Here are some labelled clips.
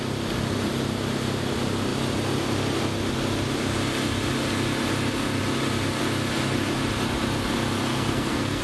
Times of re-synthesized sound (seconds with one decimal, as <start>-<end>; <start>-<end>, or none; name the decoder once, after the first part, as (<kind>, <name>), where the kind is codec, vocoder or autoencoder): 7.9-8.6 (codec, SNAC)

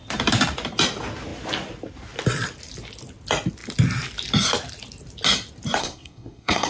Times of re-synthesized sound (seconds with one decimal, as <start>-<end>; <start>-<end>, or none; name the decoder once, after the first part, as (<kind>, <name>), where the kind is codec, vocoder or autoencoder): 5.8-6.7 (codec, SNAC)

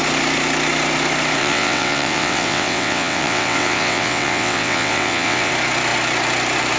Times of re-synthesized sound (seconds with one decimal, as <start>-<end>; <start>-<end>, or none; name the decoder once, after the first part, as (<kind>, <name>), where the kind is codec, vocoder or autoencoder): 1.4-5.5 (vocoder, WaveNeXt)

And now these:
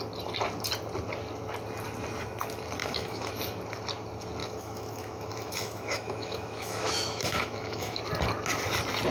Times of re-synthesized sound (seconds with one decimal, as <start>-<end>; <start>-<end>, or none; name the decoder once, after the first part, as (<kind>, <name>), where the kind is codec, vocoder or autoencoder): 2.8-3.3 (autoencoder, DAC-VAE); 4.4-8.0